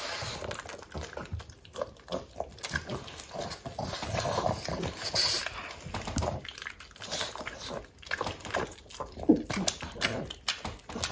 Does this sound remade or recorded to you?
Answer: recorded